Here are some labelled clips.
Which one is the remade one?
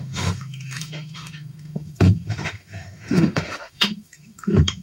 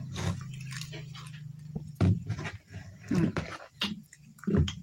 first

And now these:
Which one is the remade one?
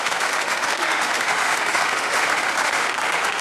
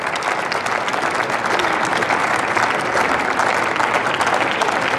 first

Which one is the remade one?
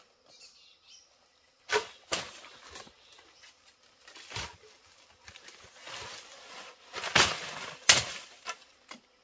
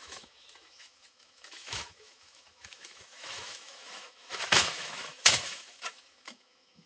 second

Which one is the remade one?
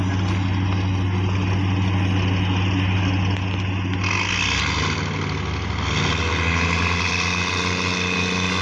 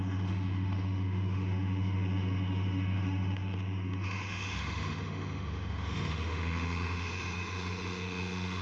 second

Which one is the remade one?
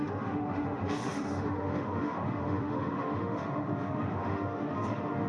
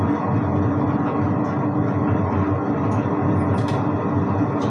first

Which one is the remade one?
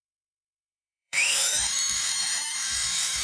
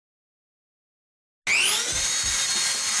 first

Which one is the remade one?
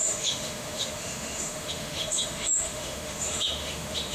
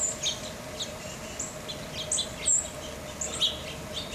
first